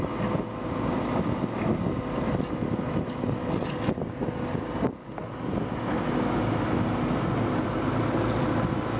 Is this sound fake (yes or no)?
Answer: no